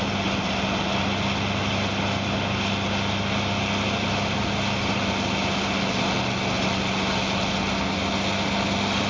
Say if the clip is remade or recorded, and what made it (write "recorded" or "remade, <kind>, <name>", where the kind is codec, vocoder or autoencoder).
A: recorded